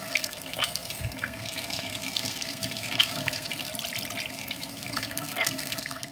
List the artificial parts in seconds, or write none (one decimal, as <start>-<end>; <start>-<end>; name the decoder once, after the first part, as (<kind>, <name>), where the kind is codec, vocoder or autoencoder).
0.0-3.7 (codec, SNAC); 4.3-6.1